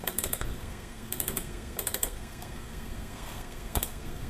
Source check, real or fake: fake